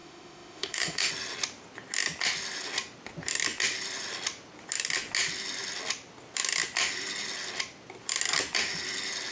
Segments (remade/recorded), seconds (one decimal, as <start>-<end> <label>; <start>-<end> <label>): 0.0-1.1 remade; 1.1-9.3 recorded